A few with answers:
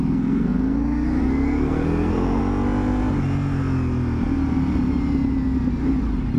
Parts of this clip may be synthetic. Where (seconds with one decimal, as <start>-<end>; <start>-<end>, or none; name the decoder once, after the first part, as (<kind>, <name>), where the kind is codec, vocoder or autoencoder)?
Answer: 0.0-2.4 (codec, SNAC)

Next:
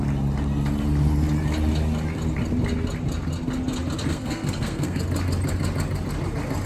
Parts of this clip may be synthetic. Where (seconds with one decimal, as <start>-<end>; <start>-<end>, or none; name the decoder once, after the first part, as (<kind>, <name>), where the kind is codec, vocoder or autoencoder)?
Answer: 4.1-5.0 (codec, SNAC)

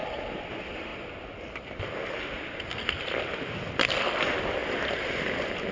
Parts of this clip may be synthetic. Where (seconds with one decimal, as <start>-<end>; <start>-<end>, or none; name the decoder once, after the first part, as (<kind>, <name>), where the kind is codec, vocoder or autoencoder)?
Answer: none

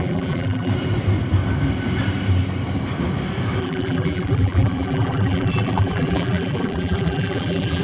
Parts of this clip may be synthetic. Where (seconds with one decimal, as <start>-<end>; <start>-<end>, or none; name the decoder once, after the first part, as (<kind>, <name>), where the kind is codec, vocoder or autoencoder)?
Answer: 0.0-0.7 (vocoder, BigVGAN v2); 3.6-7.8

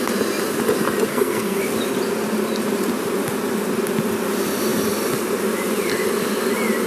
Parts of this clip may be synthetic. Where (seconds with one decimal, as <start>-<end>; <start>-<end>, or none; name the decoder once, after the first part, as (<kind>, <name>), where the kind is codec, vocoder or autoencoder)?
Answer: 1.1-1.6 (codec, SNAC)

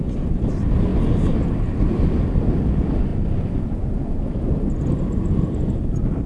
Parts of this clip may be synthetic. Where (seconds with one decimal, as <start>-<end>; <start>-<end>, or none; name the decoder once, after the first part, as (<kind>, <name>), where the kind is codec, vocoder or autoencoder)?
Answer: 0.0-6.3 (vocoder, BigVGAN v2)

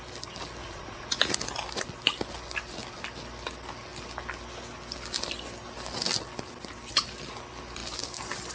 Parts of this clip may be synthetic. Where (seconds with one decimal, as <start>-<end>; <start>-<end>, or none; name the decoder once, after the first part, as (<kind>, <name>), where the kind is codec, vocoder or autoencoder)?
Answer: 0.6-1.3 (vocoder, Vocos)